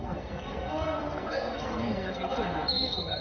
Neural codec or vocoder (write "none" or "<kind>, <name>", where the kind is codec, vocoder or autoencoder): codec, SNAC